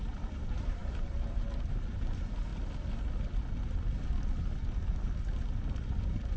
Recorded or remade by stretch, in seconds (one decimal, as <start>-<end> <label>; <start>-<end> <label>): 0.0-2.5 remade; 2.5-5.8 recorded; 5.8-6.4 remade